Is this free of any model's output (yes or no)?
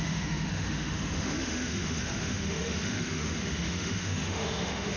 no